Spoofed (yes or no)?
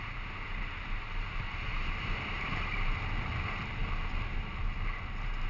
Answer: no